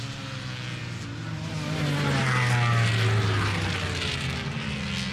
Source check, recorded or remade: recorded